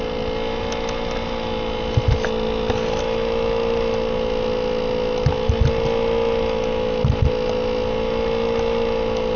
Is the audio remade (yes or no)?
no